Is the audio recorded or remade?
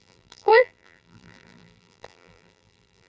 remade